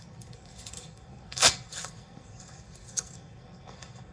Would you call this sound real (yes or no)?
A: no